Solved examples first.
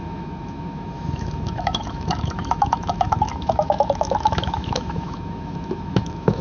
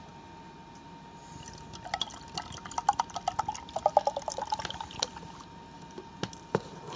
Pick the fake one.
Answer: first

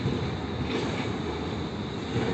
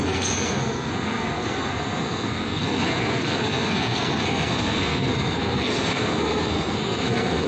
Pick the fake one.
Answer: second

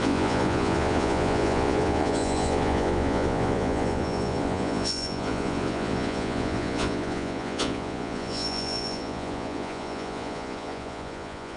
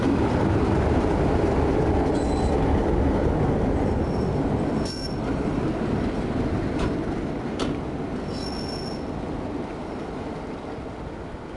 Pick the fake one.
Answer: first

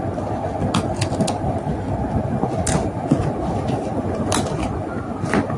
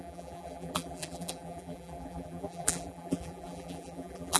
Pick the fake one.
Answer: second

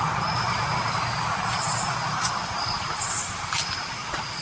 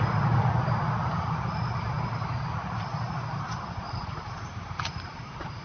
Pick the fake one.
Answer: second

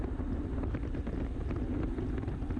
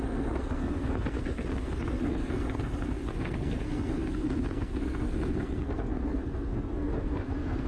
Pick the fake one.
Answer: second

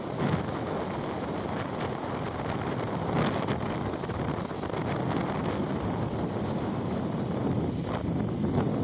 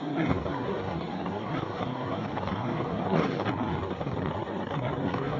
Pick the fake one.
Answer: second